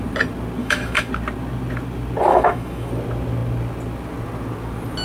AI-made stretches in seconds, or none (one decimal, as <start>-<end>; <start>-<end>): 0.6-1.1; 2.3-2.9